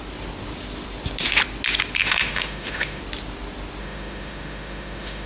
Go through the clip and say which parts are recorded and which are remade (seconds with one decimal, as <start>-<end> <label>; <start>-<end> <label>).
0.0-2.0 recorded; 2.0-3.0 remade; 3.0-3.8 recorded; 3.8-5.3 remade